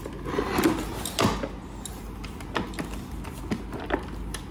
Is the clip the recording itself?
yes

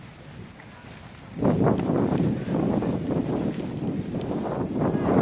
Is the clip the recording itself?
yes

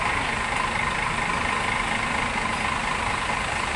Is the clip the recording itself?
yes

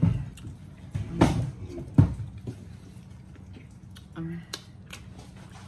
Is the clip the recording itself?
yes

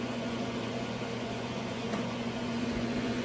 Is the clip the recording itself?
no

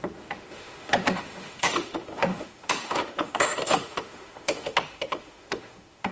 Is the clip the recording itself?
no